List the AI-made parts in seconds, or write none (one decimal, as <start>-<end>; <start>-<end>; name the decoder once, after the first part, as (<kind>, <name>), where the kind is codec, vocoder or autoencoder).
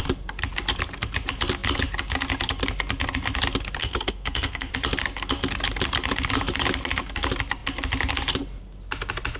3.8-4.7 (codec, SNAC)